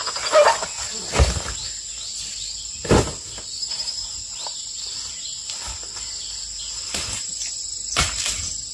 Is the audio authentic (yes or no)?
yes